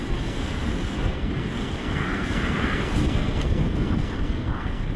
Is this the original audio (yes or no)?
no